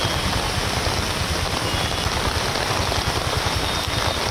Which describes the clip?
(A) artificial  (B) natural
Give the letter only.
A